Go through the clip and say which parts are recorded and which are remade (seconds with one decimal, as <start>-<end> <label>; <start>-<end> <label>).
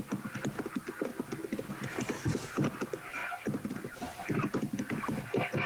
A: 0.0-1.1 remade; 1.1-1.7 recorded; 1.7-5.7 remade